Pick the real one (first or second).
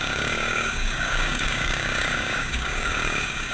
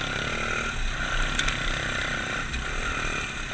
second